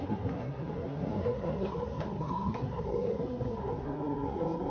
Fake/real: fake